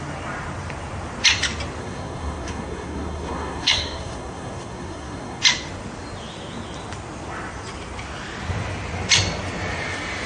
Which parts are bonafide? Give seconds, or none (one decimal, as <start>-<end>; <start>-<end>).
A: 0.0-1.8; 5.4-10.3